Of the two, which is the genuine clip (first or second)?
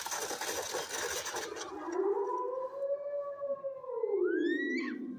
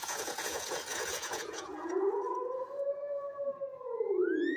first